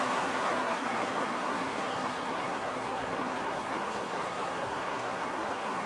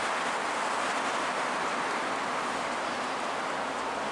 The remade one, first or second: first